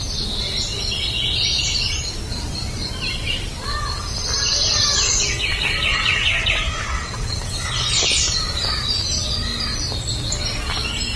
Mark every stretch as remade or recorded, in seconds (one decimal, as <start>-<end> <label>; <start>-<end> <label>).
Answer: 0.0-5.9 recorded; 5.9-7.7 remade; 7.7-11.2 recorded